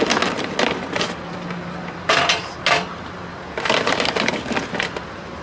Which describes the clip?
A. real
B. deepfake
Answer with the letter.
A